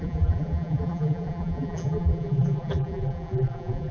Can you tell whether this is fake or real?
fake